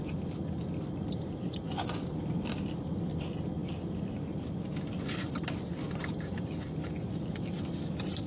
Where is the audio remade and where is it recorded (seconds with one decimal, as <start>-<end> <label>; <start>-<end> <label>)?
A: 0.0-8.3 recorded